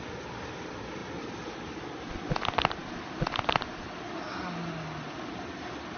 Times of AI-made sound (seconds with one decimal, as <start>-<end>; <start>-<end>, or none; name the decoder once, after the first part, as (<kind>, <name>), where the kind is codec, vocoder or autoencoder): none